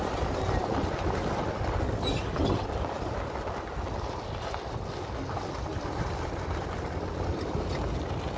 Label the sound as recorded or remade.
recorded